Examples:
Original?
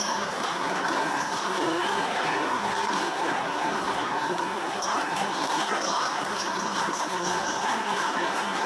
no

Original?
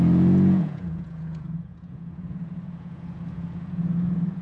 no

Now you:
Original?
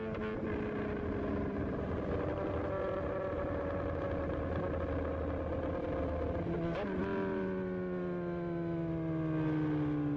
yes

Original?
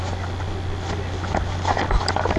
yes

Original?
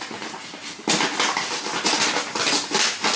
yes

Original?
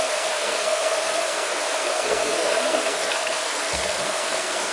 no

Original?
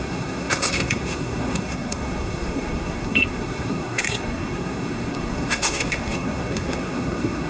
no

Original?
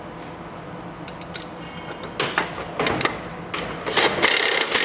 yes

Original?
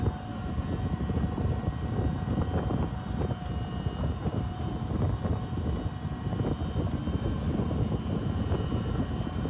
yes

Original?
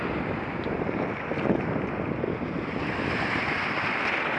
yes